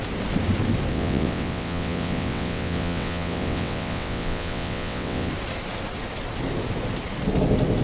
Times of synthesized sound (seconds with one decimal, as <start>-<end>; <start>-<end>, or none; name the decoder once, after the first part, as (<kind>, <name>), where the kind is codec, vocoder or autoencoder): 0.9-5.3 (vocoder, WaveNeXt)